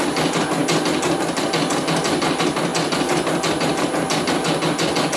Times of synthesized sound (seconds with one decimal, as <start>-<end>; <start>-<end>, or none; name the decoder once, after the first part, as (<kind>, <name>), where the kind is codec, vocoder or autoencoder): none